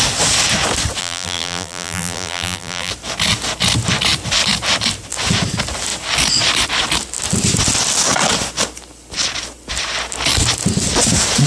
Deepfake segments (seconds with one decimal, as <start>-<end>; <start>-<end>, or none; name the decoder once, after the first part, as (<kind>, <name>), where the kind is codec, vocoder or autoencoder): 1.0-2.9 (vocoder, BigVGAN v2)

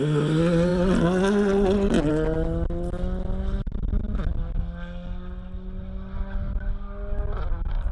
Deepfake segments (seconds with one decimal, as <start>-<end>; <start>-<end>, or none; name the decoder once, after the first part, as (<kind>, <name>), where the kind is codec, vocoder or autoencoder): none